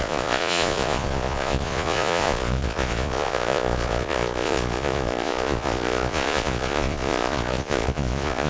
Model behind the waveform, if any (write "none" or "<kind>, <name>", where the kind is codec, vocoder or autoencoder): vocoder, Vocos